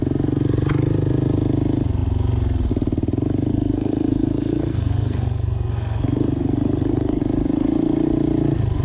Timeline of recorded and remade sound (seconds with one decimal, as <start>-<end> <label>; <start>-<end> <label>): 0.0-3.5 recorded; 3.5-7.2 remade; 7.2-8.8 recorded